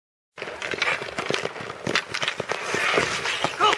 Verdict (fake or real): real